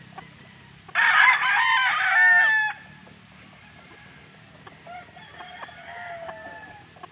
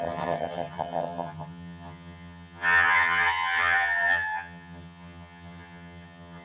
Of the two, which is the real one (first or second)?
first